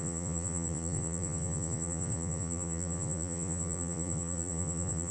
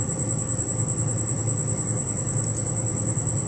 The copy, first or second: first